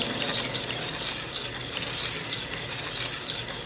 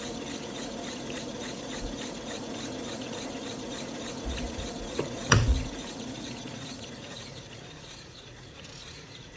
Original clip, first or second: first